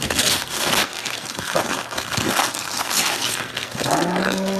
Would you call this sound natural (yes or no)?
no